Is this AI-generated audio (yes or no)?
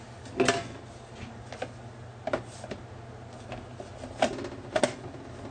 no